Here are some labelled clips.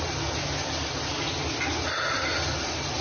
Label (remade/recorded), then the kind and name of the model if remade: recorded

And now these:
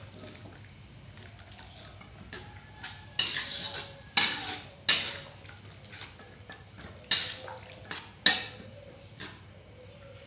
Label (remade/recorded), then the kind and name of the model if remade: recorded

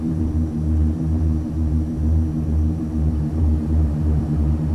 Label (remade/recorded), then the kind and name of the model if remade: remade, vocoder, BigVGAN v2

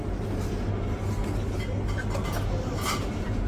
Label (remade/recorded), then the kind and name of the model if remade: recorded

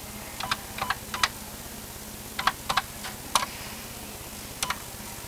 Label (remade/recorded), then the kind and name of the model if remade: recorded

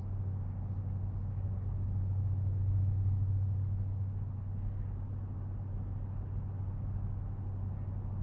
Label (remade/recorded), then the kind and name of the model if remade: recorded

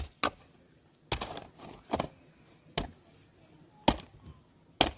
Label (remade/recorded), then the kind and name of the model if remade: recorded